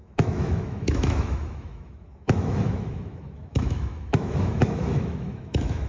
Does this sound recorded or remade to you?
remade